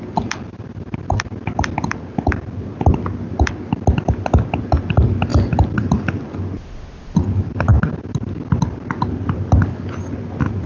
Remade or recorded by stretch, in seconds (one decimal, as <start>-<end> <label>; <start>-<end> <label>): 0.0-10.7 recorded